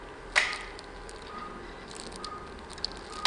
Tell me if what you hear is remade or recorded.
recorded